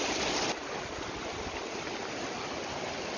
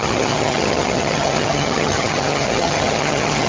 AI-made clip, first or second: second